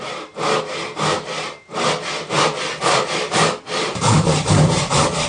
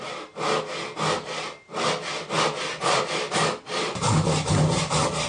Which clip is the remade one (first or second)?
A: first